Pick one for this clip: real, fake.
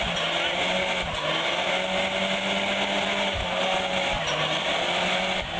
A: real